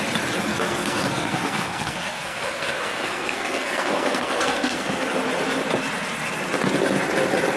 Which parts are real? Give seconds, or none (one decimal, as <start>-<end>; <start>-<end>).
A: 0.0-0.5; 5.1-7.6